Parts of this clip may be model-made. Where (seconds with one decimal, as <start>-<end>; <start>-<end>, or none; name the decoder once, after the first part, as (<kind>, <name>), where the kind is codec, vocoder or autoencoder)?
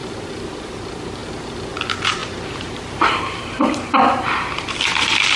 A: 0.0-1.2 (vocoder, BigVGAN v2); 1.8-5.4